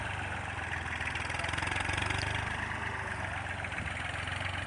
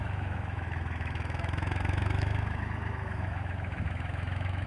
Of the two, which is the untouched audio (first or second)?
first